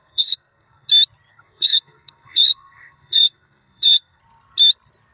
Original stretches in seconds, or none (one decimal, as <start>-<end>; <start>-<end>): 0.9-1.3; 4.2-5.1